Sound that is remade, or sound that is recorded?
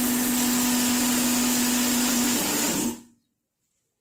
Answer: recorded